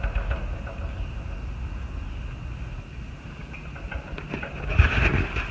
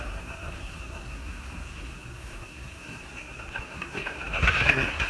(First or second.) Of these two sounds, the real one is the first